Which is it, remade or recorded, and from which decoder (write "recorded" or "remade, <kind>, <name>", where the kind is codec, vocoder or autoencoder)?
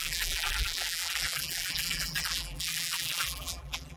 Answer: remade, vocoder, BigVGAN v2